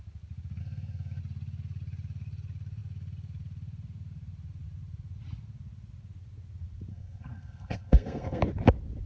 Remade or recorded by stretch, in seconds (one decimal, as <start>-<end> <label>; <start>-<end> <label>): 0.0-0.6 recorded; 0.6-1.2 remade; 1.2-6.9 recorded; 6.9-8.4 remade; 8.4-9.1 recorded